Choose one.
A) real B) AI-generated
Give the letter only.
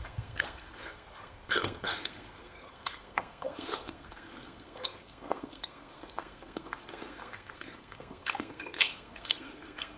B